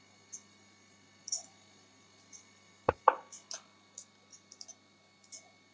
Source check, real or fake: real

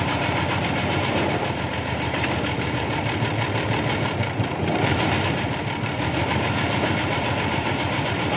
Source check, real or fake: fake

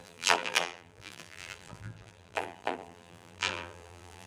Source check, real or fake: fake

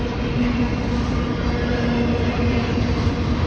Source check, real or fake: real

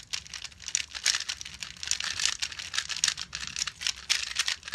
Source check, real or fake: real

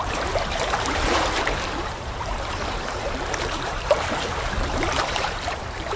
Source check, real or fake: fake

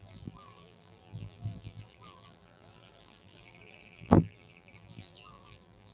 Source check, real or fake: fake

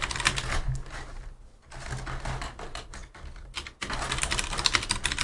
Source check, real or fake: real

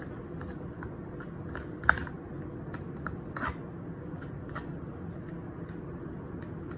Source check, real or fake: real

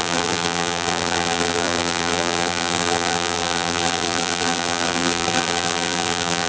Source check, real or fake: fake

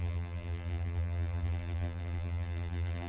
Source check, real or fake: fake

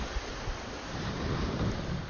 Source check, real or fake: fake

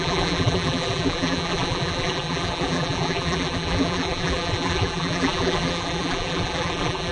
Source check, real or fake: fake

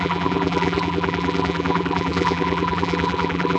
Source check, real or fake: fake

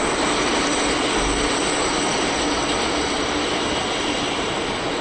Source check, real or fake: real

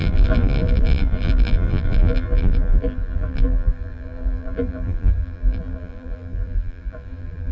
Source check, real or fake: fake